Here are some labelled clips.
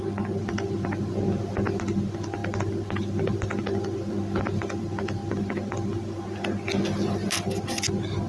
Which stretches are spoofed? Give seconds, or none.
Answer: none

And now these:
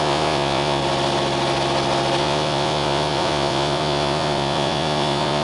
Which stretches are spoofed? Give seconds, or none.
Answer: 0.0-0.8 (vocoder, Vocos); 2.2-5.4

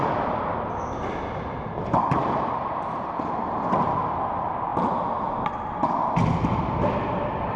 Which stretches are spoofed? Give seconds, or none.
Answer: none

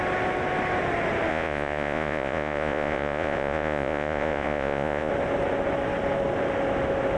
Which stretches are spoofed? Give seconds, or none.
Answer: 1.3-5.1 (vocoder, Vocos)

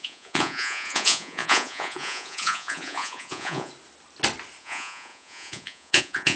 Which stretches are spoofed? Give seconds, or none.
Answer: 0.0-3.7 (vocoder, Vocos); 4.6-6.4

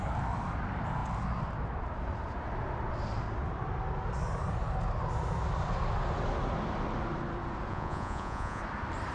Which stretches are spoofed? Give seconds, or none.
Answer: 7.7-8.6 (vocoder, Vocos)

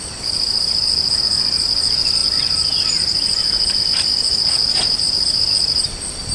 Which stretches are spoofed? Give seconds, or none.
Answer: none